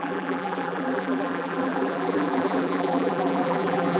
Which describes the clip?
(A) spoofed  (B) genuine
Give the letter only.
A